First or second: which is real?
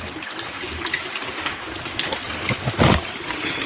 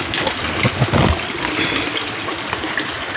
second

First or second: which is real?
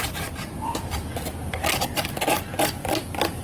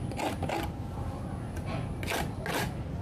second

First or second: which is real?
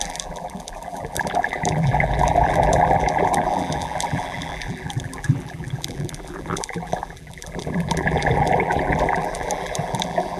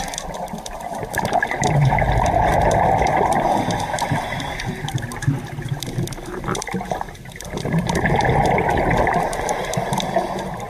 second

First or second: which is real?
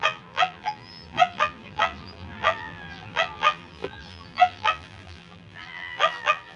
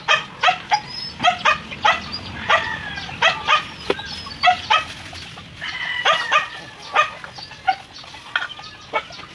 second